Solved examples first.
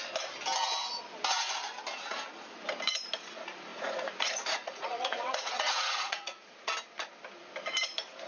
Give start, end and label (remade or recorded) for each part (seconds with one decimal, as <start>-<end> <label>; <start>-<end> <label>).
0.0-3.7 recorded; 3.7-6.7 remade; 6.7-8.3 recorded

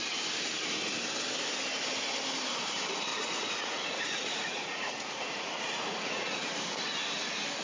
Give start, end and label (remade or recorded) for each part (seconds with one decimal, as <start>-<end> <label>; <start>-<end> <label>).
0.0-3.1 recorded; 3.1-6.4 remade; 6.4-7.6 recorded

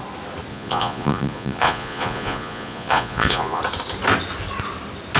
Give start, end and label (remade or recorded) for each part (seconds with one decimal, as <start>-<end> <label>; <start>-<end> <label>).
0.0-0.5 recorded; 0.5-3.6 remade; 3.6-5.2 recorded

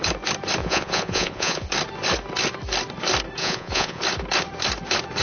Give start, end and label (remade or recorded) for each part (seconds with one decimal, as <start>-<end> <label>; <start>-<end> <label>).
0.0-0.6 recorded; 0.6-1.7 remade; 1.7-3.4 recorded; 3.4-4.0 remade; 4.0-5.2 recorded